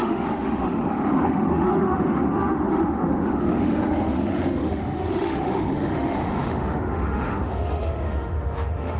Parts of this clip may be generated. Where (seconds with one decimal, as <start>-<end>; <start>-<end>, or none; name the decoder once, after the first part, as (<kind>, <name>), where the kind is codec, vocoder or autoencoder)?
0.0-9.0 (autoencoder, DAC-VAE)